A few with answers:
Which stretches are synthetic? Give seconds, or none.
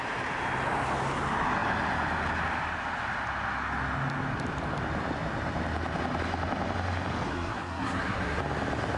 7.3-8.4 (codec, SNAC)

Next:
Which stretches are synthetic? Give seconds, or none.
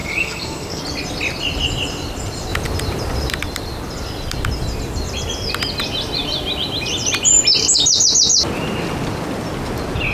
0.0-0.8 (codec, SNAC)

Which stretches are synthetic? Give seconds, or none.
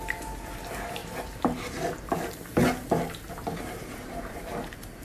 0.0-1.0 (vocoder, BigVGAN v2); 3.3-5.0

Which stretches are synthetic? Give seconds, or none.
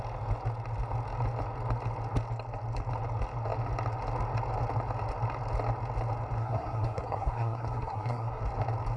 6.4-8.4 (codec, SNAC)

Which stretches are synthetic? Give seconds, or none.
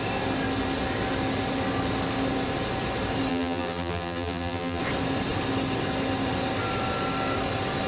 3.3-4.8 (vocoder, BigVGAN v2)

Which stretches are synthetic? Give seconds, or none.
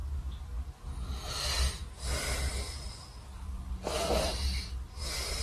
none